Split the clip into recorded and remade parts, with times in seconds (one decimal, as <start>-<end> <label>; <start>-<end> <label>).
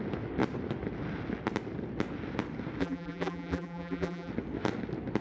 0.0-2.8 recorded; 2.8-4.3 remade; 4.3-5.2 recorded